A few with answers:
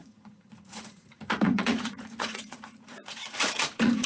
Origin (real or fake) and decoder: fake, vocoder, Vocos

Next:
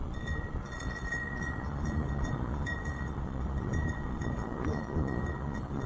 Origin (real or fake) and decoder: fake, vocoder, Vocos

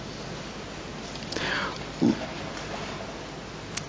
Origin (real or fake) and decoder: real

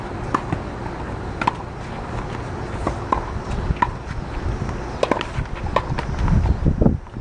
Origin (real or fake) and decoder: real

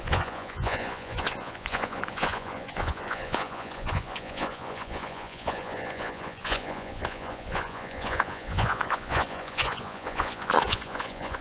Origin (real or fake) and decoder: fake, vocoder, Vocos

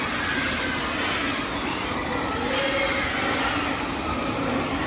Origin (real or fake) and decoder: real